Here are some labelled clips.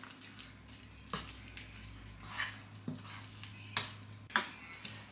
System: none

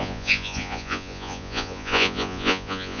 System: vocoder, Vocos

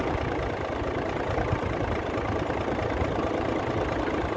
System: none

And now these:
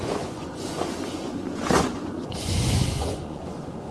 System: vocoder, Vocos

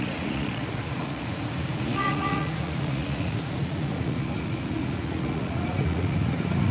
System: vocoder, Vocos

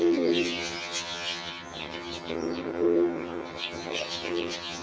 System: vocoder, HiFi-GAN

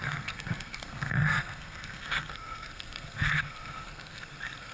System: codec, SNAC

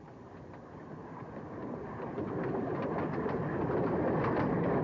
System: none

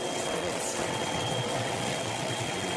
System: vocoder, WaveNeXt